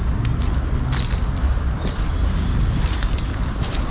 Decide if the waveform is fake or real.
real